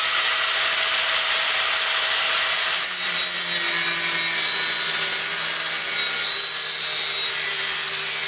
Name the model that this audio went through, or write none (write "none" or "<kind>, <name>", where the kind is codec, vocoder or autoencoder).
none